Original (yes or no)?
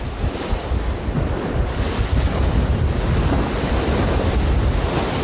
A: yes